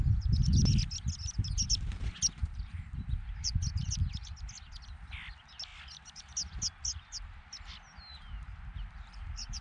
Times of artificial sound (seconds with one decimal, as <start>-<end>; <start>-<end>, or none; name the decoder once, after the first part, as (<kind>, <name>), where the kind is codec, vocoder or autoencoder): 2.4-3.6 (vocoder, BigVGAN v2); 8.1-9.6